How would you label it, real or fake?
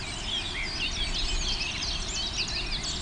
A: real